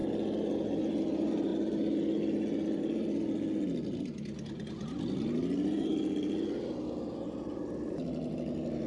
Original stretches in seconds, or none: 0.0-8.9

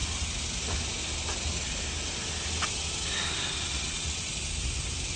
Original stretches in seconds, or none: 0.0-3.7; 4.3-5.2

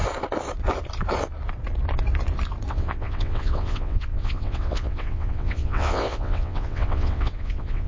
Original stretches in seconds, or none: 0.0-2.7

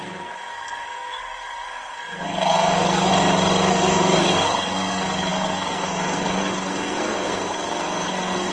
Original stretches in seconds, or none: 3.1-3.7

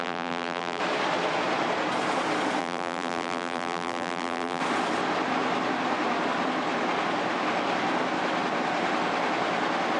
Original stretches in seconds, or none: 0.8-2.6; 4.6-10.0

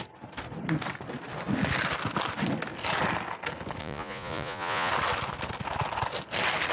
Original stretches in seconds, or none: 0.0-3.8; 4.9-6.7